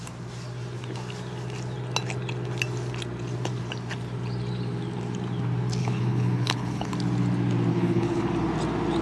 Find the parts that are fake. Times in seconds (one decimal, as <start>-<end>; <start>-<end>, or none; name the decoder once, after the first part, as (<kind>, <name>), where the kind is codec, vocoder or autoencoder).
5.8-6.9 (codec, HILCodec); 7.7-8.3